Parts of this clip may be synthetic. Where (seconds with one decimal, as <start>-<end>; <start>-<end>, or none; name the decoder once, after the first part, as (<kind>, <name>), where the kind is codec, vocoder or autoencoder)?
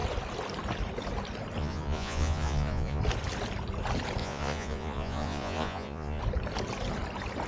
1.6-3.0 (vocoder, Vocos); 4.2-6.2